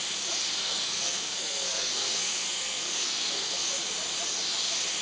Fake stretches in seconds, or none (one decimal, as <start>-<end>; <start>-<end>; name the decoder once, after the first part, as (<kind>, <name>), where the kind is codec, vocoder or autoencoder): 0.6-3.6 (codec, SNAC)